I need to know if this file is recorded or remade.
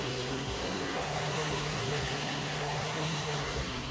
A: remade